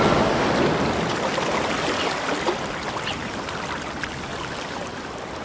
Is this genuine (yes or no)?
yes